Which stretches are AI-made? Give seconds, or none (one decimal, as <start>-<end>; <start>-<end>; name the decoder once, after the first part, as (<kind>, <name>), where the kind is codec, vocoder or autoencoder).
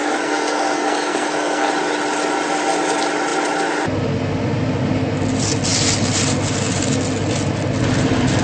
0.0-1.7 (codec, SNAC)